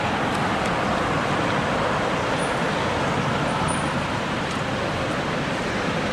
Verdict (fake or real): real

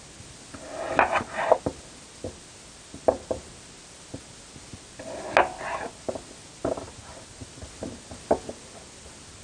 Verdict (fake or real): real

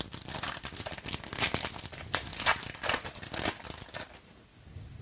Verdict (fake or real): real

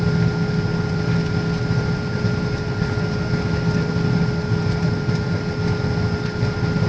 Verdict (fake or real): real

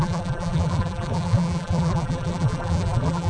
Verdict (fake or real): fake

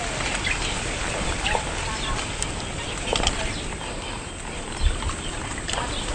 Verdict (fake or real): real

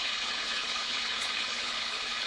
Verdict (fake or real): fake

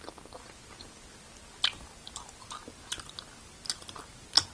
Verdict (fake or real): real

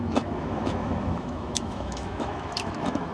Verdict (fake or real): fake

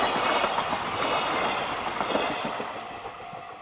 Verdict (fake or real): real